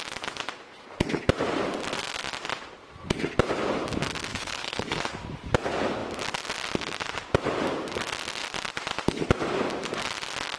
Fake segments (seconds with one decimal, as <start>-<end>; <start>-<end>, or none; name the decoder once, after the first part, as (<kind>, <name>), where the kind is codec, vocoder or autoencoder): 4.3-5.0 (codec, HILCodec)